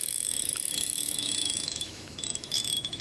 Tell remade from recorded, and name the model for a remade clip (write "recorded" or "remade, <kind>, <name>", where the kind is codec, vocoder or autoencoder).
remade, autoencoder, DAC-VAE